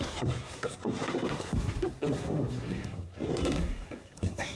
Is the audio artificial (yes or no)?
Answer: yes